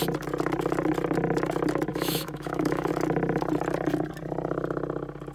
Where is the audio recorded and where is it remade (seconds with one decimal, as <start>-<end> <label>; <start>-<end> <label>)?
0.0-1.9 recorded; 1.9-2.9 remade; 2.9-5.3 recorded